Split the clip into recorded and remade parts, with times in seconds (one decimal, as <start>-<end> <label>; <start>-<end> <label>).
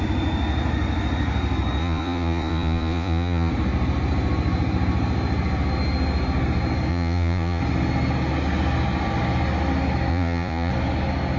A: 0.0-1.8 recorded; 1.8-3.5 remade; 3.5-6.9 recorded; 6.9-7.6 remade; 7.6-10.1 recorded; 10.1-10.7 remade; 10.7-11.4 recorded